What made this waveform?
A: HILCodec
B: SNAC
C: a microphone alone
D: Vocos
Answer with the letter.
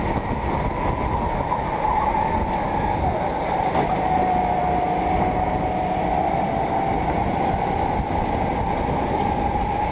C